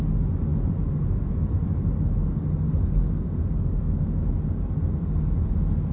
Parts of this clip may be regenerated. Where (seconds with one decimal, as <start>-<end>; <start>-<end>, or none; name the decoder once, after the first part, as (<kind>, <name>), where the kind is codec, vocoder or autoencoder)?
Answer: 2.8-4.3 (codec, SNAC)